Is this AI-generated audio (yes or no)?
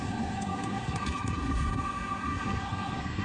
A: yes